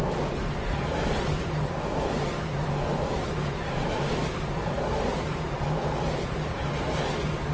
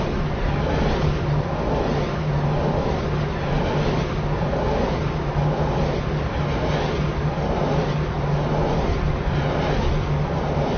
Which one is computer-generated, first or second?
first